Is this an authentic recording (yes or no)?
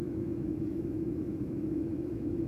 no